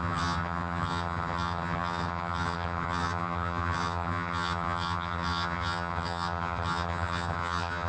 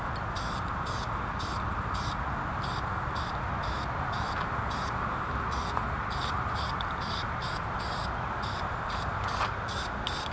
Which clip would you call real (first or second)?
second